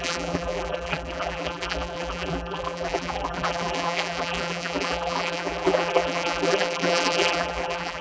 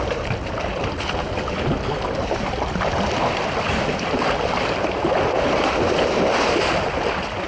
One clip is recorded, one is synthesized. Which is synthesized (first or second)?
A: first